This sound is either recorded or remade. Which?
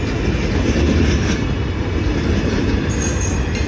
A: recorded